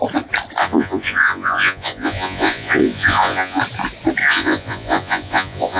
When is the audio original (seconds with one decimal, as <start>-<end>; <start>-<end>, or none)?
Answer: 0.0-0.6; 3.6-4.2